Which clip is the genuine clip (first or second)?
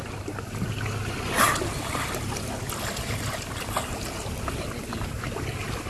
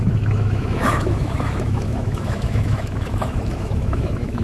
first